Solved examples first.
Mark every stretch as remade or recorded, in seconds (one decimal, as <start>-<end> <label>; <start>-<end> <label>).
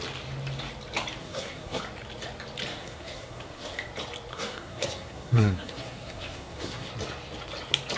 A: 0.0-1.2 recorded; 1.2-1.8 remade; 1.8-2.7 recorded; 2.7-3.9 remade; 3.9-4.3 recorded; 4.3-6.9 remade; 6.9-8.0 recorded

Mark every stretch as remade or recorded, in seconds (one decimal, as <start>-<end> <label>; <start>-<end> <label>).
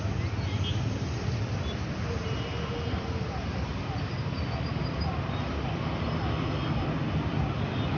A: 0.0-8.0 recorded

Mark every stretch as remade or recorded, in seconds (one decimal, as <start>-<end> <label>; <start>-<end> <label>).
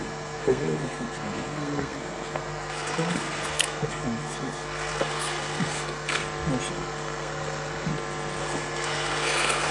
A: 0.0-6.2 remade; 6.2-6.7 recorded; 6.7-7.9 remade; 7.9-8.4 recorded; 8.4-9.7 remade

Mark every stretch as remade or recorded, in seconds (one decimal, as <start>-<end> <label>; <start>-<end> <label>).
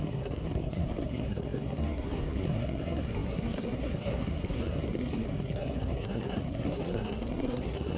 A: 0.0-8.0 remade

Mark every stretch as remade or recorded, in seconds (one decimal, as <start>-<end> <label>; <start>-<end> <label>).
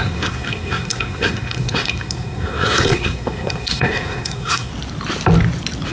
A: 0.0-4.7 remade; 4.7-5.9 recorded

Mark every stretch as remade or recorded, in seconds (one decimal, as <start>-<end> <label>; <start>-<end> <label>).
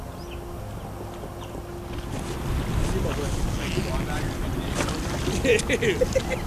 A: 0.0-6.5 recorded